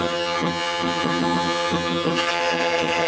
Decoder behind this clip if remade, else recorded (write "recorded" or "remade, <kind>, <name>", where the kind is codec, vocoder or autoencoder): remade, vocoder, HiFi-GAN